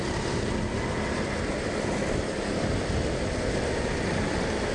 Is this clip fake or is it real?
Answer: real